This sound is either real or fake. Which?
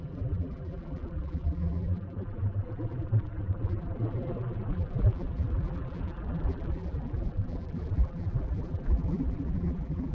fake